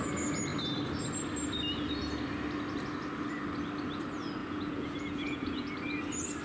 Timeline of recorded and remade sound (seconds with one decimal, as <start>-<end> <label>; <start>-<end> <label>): 0.0-4.4 recorded; 4.4-5.7 remade; 5.7-6.4 recorded